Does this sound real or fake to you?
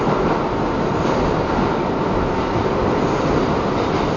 real